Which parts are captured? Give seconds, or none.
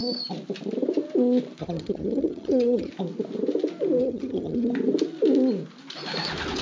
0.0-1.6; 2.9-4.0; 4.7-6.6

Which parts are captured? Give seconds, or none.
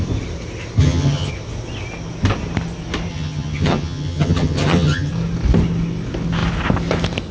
0.0-0.8; 1.3-3.1; 5.1-7.3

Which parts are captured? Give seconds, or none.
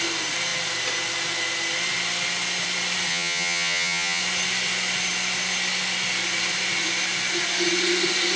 0.0-3.1; 4.2-8.4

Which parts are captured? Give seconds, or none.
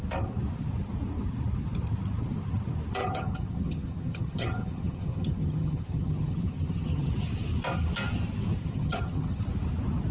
0.0-3.0; 7.1-8.6; 9.4-10.1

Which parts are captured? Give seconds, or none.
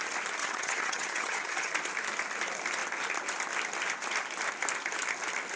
0.0-0.4; 1.7-5.6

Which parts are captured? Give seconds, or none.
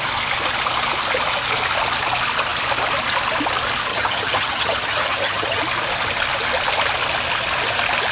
0.0-3.9; 5.6-8.1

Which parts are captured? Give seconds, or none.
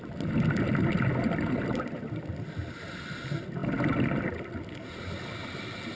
0.0-5.9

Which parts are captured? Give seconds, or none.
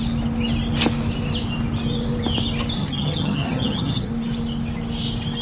0.0-2.8; 4.1-5.4